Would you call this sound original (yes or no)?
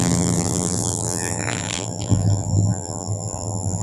no